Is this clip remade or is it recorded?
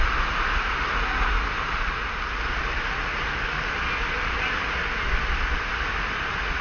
recorded